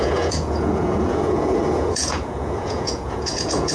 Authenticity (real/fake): fake